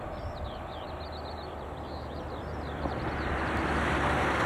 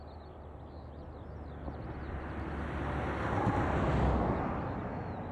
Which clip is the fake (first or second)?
first